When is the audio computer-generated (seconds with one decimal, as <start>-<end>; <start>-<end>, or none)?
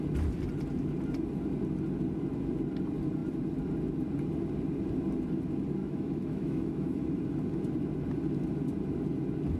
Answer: 5.8-7.2